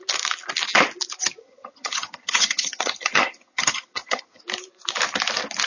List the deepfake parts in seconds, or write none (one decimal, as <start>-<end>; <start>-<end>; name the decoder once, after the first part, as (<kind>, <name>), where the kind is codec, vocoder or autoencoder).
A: 1.4-4.4 (vocoder, HiFi-GAN)